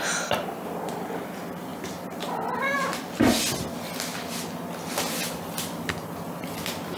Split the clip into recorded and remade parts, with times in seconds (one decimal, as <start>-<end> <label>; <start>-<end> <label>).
0.0-7.0 recorded